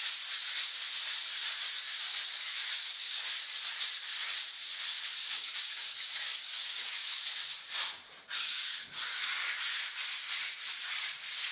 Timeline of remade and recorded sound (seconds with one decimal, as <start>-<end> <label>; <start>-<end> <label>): 0.0-2.1 recorded; 2.1-3.4 remade; 3.4-5.2 recorded; 5.2-7.2 remade; 7.2-8.4 recorded; 8.4-9.2 remade; 9.2-11.5 recorded